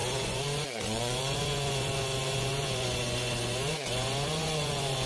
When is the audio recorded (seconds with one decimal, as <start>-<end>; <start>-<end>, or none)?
none